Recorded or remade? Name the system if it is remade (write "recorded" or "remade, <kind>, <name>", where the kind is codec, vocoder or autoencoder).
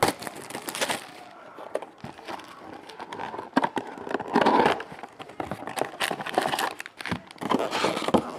recorded